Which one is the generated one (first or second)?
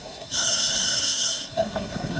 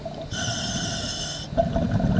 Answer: first